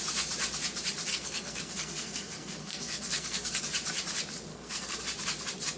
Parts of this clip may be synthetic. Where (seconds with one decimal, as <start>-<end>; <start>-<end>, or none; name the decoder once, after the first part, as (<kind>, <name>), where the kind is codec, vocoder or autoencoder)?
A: 1.1-3.6 (codec, SNAC); 4.5-5.0